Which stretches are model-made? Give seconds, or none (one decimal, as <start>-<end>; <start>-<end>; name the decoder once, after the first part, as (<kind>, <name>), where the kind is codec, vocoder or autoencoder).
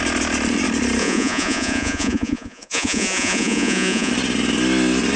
1.0-4.1 (vocoder, Vocos)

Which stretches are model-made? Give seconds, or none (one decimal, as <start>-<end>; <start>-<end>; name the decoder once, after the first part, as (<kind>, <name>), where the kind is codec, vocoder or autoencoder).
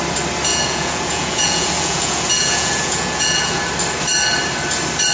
0.5-3.6 (vocoder, Vocos)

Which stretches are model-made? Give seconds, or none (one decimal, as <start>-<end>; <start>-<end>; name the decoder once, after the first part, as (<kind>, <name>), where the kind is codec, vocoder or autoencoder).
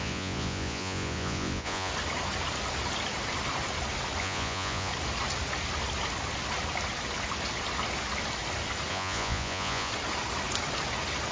0.0-1.9 (vocoder, Vocos); 4.2-4.9; 8.9-9.9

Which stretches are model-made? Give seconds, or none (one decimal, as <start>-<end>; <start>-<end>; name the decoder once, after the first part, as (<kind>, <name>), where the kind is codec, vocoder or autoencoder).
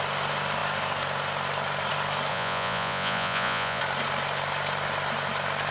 2.3-3.8 (vocoder, Vocos)